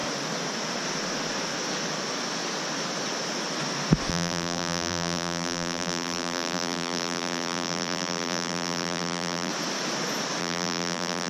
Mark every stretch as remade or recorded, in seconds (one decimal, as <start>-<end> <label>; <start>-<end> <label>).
0.0-4.1 recorded; 4.1-9.5 remade; 9.5-10.4 recorded; 10.4-11.3 remade